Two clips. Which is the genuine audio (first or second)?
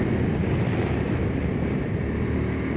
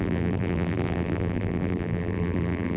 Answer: first